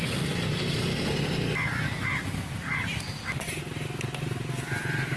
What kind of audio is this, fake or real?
real